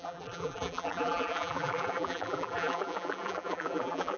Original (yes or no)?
no